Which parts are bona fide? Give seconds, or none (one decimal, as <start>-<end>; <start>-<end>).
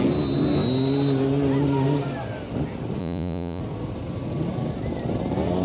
0.0-3.0; 3.6-5.6